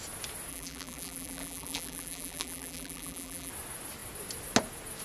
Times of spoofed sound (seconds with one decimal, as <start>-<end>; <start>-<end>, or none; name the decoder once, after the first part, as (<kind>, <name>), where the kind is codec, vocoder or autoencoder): 0.5-3.5 (vocoder, BigVGAN v2)